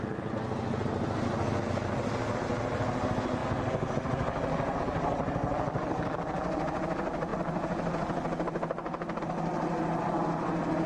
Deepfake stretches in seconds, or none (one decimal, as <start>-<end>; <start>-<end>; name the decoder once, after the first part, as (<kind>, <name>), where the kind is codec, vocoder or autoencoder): none

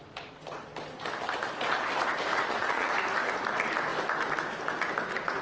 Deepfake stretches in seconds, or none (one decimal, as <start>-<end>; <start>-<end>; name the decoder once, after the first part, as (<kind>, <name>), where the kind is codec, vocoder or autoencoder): 2.3-2.9 (vocoder, Vocos)

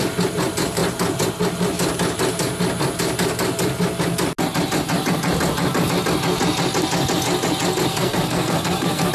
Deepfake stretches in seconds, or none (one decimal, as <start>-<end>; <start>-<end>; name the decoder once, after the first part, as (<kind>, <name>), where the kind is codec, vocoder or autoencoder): 7.9-9.1 (codec, SNAC)

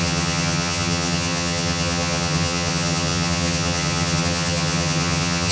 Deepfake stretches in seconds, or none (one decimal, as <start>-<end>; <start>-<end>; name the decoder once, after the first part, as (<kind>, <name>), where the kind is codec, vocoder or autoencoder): 0.0-5.5 (vocoder, HiFi-GAN)